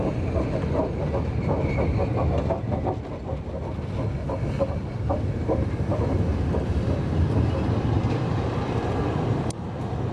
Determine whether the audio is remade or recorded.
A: recorded